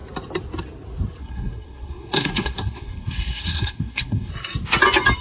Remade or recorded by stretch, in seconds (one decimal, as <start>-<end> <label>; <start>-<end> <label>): 0.0-1.2 recorded; 1.2-4.3 remade; 4.3-5.2 recorded